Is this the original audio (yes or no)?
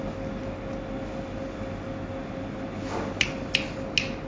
yes